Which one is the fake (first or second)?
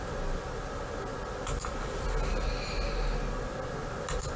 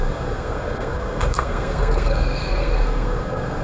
second